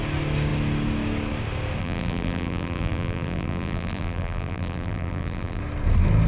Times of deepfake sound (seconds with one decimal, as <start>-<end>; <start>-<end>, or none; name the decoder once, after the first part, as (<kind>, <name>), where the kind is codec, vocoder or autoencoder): 1.8-5.6 (vocoder, BigVGAN v2)